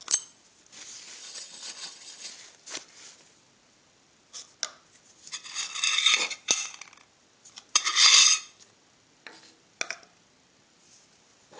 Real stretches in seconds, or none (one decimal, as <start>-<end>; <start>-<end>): 0.0-1.2; 2.3-11.6